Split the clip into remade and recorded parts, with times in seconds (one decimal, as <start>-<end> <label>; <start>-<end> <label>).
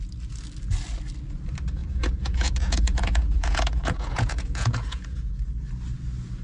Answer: 0.0-1.8 recorded; 1.8-5.3 remade; 5.3-6.4 recorded